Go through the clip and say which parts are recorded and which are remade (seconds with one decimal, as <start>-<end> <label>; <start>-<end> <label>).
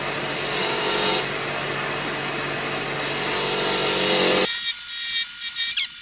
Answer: 0.0-0.6 recorded; 0.6-1.2 remade; 1.2-6.0 recorded